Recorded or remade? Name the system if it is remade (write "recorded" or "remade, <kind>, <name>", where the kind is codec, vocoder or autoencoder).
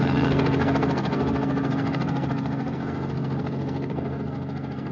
remade, codec, SNAC